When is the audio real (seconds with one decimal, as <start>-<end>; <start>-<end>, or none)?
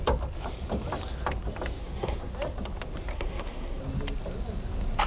0.0-1.8; 2.3-3.1; 3.8-5.1